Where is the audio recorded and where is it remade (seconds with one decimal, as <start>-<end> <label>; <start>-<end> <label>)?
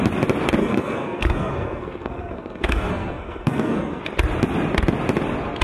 0.0-0.6 recorded; 0.6-4.0 remade; 4.0-5.6 recorded